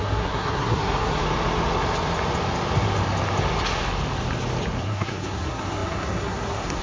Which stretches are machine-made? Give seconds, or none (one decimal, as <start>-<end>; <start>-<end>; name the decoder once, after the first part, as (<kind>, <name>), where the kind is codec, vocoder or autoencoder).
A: 0.0-1.2 (codec, SNAC); 4.8-6.8